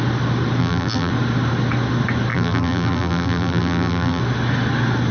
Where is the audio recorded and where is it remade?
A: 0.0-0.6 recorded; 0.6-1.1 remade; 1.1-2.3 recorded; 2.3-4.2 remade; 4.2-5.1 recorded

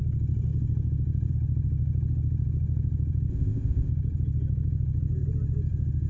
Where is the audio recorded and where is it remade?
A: 0.0-3.3 recorded; 3.3-3.9 remade; 3.9-6.1 recorded